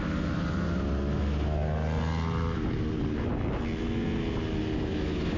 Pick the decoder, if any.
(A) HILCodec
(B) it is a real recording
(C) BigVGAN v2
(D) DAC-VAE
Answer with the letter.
B